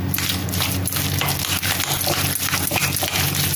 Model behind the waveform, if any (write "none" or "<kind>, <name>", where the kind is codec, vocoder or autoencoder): none